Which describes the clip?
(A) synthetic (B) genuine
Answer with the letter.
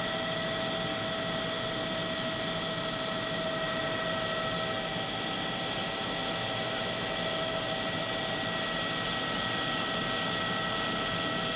B